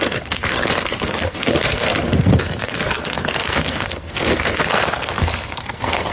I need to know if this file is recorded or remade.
remade